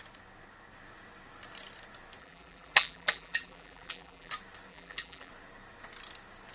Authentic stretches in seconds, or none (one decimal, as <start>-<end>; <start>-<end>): 0.0-2.2; 4.3-4.7; 5.3-6.5